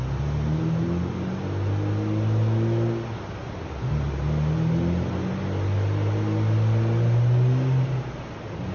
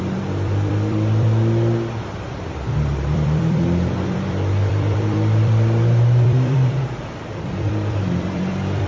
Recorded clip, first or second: first